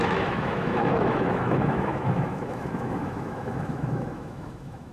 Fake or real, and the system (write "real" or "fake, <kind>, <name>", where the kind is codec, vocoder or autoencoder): fake, autoencoder, DAC-VAE